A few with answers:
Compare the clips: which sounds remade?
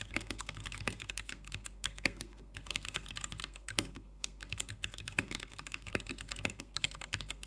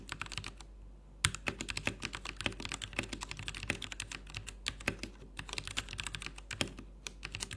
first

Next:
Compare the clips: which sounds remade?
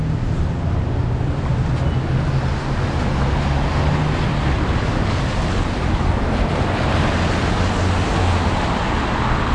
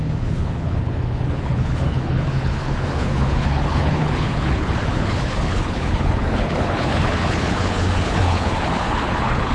second